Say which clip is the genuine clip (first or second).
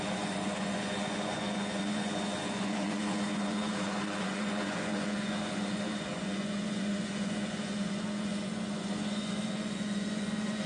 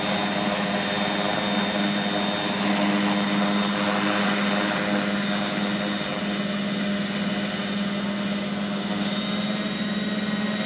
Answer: second